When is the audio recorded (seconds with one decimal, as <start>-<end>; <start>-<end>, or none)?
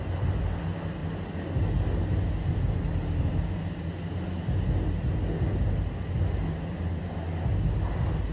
0.0-8.3